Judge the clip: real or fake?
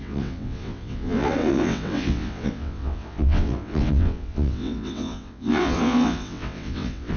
fake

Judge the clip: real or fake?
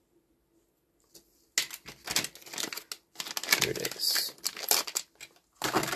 real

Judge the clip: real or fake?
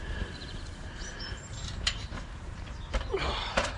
fake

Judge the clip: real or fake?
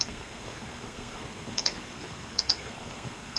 fake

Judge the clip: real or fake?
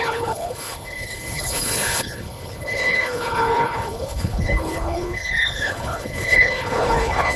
fake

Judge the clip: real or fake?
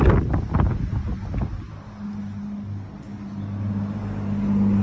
real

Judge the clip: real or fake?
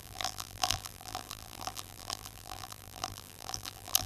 fake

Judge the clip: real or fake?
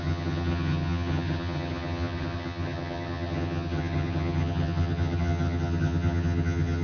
fake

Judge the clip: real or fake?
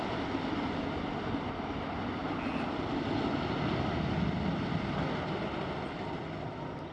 real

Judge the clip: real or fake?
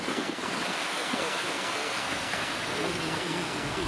fake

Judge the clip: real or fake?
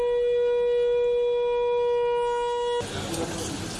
real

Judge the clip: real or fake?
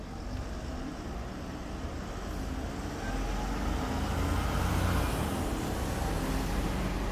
real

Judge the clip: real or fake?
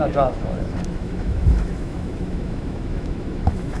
fake